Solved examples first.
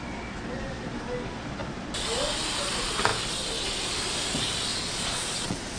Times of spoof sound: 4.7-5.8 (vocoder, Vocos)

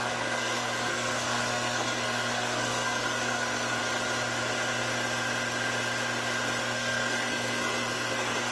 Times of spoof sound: 0.0-3.8 (codec, SNAC); 6.6-8.5

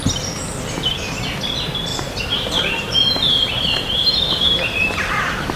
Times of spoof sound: 1.9-5.6 (vocoder, BigVGAN v2)